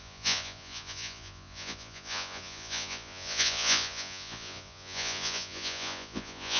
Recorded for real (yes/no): no